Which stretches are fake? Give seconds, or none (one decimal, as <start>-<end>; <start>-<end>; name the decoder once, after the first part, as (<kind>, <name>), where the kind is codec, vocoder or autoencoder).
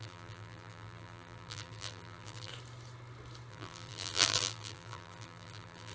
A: 0.0-2.5 (vocoder, BigVGAN v2); 3.5-5.9